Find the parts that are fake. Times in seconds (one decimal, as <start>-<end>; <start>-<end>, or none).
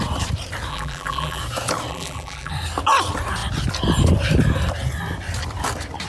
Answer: 0.7-1.4; 1.9-2.5